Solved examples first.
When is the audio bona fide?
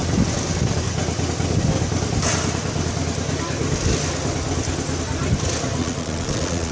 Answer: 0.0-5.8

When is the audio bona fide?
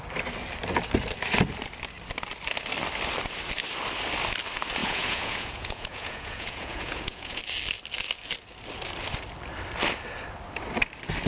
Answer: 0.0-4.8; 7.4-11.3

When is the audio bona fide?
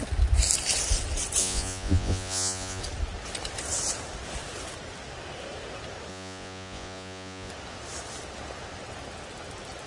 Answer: 0.0-1.4; 2.8-6.1; 7.5-9.9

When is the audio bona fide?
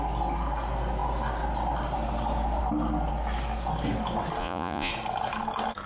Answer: 0.0-4.4; 4.9-5.9